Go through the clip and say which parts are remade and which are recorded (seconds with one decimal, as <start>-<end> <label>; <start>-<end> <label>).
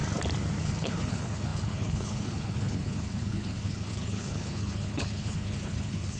0.0-0.6 recorded; 0.6-6.2 remade